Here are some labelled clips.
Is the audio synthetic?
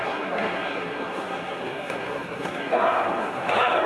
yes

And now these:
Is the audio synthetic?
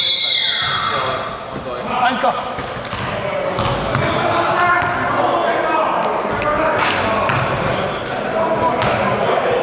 no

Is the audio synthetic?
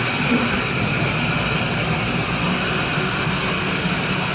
no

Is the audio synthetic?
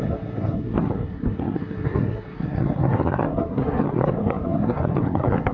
yes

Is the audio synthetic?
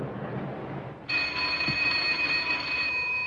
no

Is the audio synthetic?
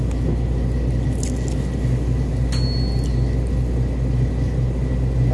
no